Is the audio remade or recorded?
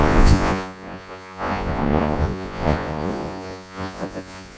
remade